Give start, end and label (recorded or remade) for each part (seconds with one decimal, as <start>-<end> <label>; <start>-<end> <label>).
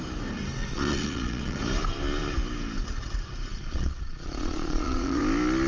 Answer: 0.0-0.6 recorded; 0.6-1.6 remade; 1.6-3.5 recorded; 3.5-5.2 remade; 5.2-5.7 recorded